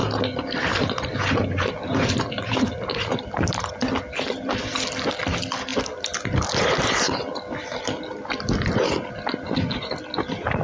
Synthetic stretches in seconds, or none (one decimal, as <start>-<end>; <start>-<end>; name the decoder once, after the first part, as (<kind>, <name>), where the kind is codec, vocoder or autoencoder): 0.0-3.7 (vocoder, BigVGAN v2)